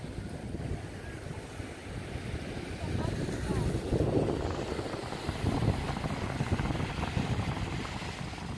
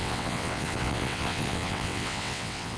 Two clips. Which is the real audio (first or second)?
first